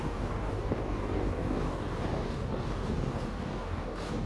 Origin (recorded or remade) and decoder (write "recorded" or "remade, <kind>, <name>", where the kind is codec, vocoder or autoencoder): remade, codec, DAC